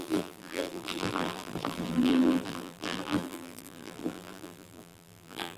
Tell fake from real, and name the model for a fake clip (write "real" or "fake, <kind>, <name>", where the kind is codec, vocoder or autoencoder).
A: fake, vocoder, BigVGAN v2